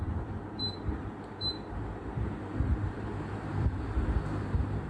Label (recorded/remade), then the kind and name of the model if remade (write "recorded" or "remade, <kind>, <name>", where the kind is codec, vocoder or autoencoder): remade, vocoder, BigVGAN v2